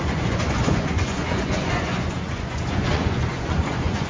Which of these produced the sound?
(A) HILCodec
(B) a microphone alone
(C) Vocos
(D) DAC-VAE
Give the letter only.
C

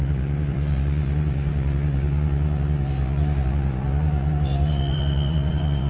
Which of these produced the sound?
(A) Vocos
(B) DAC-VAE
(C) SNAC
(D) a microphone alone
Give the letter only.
A